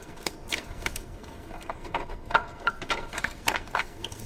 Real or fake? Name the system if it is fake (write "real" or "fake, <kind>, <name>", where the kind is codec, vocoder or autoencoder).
fake, codec, SNAC